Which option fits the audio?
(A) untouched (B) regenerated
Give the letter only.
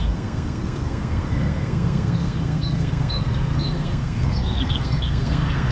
B